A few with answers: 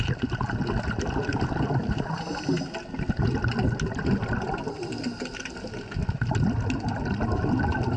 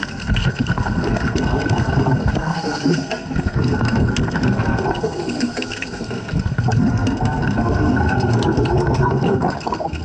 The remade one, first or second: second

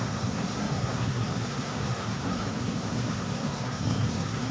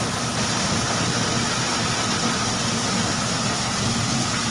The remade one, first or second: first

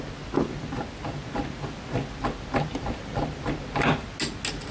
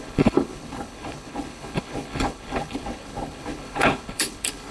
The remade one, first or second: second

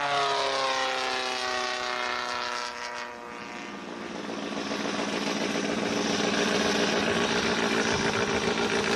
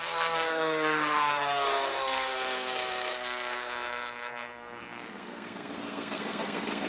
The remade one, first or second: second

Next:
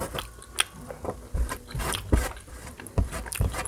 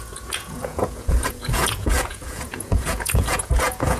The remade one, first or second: second